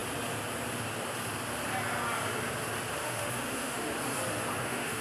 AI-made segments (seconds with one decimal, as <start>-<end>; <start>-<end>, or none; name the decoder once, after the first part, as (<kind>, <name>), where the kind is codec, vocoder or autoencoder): 3.0-3.9 (autoencoder, DAC-VAE); 4.6-5.0